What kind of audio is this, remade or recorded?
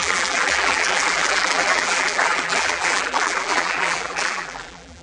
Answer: remade